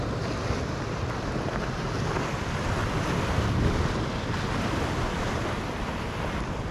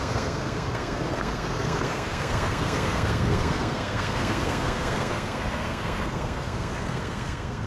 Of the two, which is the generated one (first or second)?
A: second